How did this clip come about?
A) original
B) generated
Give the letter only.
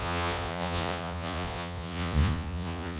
B